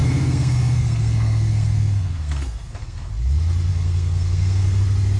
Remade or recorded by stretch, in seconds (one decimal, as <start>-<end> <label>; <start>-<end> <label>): 0.0-3.1 remade; 3.1-3.7 recorded; 3.7-4.8 remade; 4.8-5.2 recorded